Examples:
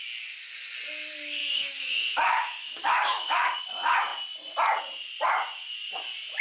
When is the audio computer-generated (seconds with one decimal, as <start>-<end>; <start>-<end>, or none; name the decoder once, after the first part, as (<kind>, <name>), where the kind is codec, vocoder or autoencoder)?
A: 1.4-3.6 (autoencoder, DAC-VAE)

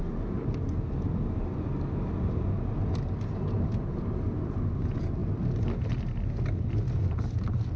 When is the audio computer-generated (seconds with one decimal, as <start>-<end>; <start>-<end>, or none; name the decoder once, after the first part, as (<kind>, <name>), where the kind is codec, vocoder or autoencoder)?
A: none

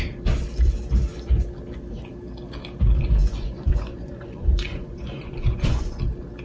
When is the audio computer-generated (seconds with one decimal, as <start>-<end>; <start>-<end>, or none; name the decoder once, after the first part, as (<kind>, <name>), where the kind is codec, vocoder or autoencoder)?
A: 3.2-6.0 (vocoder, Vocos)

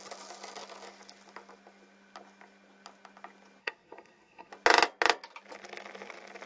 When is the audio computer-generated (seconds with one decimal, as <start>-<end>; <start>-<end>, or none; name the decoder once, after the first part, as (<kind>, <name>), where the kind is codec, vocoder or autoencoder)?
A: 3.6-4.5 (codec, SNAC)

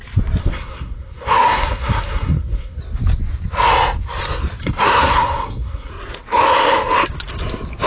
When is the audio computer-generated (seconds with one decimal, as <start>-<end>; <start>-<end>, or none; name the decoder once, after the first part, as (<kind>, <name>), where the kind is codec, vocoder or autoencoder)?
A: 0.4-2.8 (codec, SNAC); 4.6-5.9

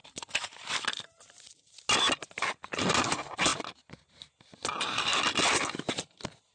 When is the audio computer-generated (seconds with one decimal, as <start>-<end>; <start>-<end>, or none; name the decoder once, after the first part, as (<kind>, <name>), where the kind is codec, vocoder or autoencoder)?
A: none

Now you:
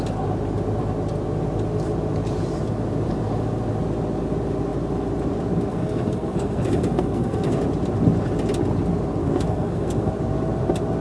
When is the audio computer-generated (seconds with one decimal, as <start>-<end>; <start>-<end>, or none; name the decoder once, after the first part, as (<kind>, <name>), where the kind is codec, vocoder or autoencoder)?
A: 5.7-7.6 (codec, SNAC); 9.2-10.1

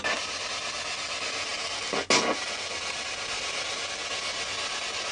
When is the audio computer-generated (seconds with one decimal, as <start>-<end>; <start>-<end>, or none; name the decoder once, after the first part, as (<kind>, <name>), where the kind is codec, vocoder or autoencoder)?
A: none